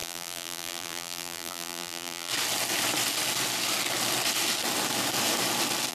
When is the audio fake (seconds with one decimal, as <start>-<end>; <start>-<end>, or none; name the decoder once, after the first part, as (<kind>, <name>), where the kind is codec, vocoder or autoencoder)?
0.0-2.3 (vocoder, BigVGAN v2)